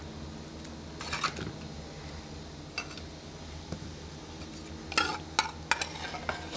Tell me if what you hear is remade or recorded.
recorded